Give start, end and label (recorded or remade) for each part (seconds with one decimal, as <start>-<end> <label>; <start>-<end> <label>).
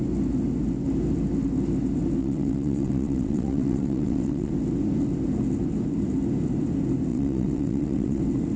0.0-2.2 recorded; 2.2-4.5 remade; 4.5-7.1 recorded; 7.1-8.2 remade; 8.2-8.6 recorded